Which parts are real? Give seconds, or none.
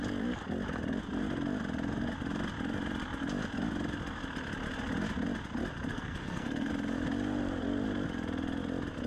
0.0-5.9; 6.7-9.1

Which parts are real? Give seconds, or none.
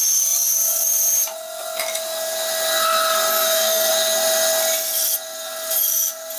0.0-3.3; 3.9-6.4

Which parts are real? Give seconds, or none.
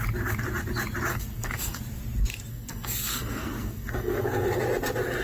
0.0-1.1; 1.8-2.5; 4.6-5.2